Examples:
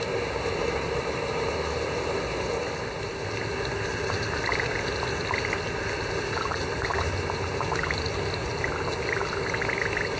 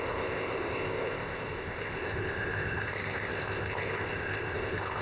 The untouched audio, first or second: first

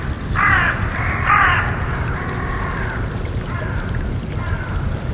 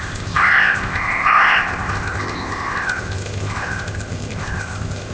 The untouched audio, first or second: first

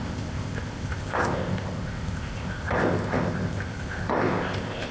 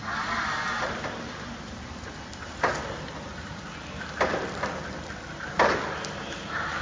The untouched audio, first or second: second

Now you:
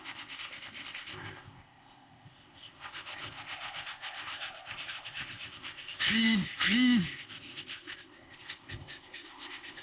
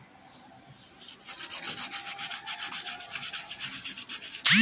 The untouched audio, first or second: second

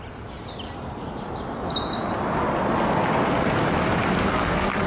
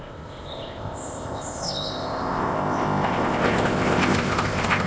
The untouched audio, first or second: first